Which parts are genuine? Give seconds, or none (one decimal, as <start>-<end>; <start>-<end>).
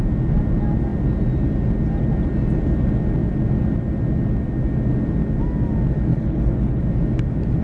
0.0-6.1; 6.8-7.6